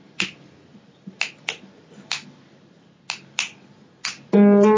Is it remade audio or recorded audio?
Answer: recorded